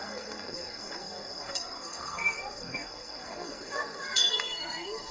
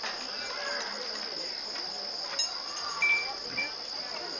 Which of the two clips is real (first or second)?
second